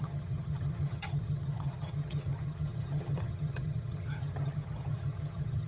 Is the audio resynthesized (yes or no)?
yes